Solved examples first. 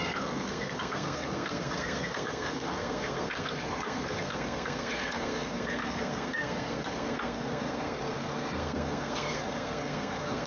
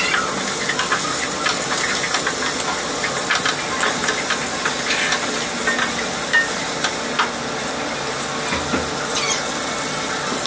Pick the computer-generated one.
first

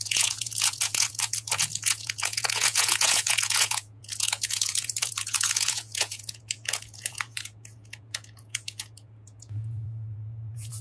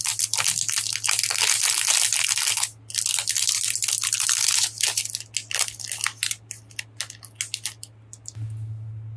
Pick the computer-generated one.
first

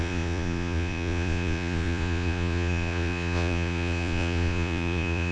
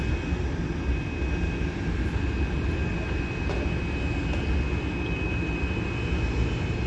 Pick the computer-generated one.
first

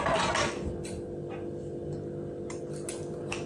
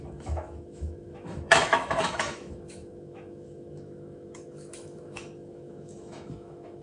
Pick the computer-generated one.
second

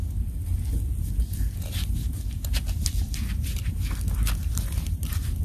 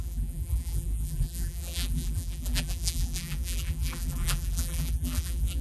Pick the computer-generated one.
second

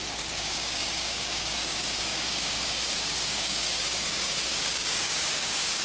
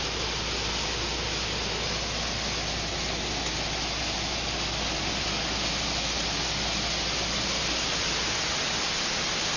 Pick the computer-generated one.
first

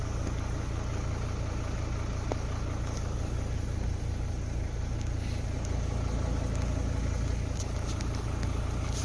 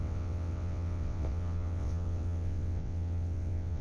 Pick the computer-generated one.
second